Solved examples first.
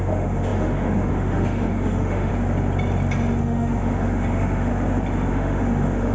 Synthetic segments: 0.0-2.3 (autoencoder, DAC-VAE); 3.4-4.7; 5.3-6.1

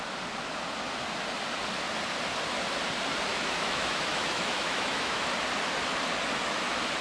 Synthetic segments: 3.3-5.2 (autoencoder, DAC-VAE)

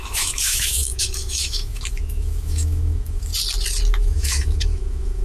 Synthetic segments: 0.0-3.3 (autoencoder, DAC-VAE); 3.9-5.2

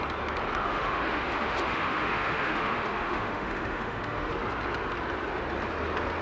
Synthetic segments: 0.6-4.3 (autoencoder, DAC-VAE)